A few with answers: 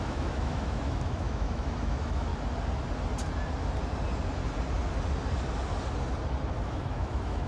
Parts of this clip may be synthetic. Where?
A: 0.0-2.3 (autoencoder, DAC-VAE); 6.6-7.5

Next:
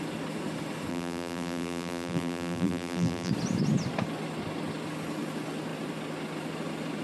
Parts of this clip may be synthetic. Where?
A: 0.9-3.3 (vocoder, BigVGAN v2)

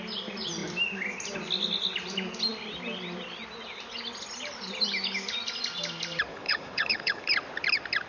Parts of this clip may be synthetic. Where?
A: 6.3-7.3 (codec, HILCodec)

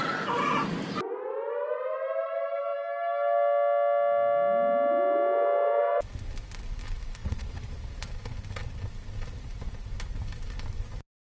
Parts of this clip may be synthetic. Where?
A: 7.2-8.1 (vocoder, Vocos)

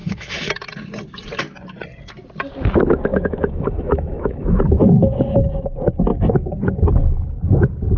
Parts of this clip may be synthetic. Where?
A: 0.0-0.5 (autoencoder, DAC-VAE); 3.1-4.6

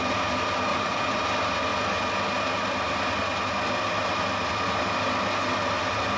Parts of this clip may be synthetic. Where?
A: 0.7-1.2 (vocoder, Vocos)